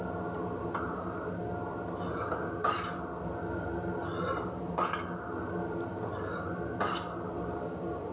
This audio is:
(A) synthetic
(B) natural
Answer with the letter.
B